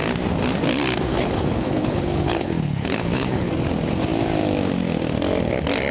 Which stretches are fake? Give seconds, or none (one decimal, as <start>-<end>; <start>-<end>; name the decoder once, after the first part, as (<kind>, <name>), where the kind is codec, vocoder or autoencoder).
1.1-3.5 (codec, HILCodec)